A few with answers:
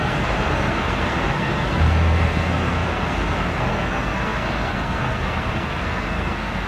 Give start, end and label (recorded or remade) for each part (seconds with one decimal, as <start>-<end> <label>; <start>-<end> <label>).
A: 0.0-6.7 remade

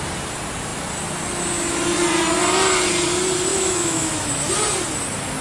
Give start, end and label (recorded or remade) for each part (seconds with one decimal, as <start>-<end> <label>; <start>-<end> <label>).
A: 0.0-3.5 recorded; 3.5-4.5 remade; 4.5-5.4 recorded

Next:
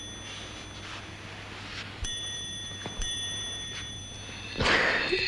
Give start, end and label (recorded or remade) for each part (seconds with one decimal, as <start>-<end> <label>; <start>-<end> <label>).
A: 0.0-1.7 recorded; 1.7-4.0 remade; 4.0-5.3 recorded

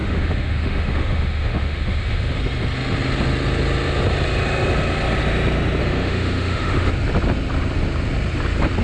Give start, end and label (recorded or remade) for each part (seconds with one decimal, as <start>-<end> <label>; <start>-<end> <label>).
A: 0.0-2.4 remade; 2.4-5.8 recorded; 5.8-6.9 remade; 6.9-8.8 recorded